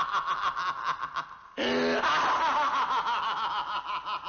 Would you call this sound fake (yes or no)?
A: no